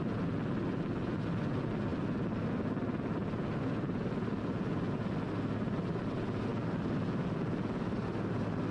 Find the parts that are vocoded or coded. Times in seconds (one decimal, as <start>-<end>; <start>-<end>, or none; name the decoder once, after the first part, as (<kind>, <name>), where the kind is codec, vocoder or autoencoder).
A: none